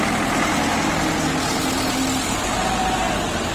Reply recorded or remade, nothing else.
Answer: recorded